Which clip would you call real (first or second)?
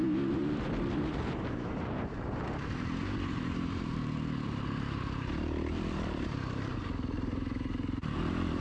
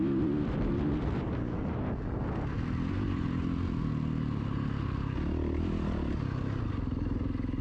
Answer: second